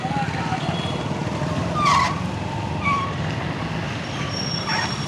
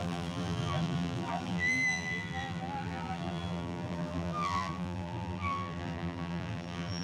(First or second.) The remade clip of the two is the second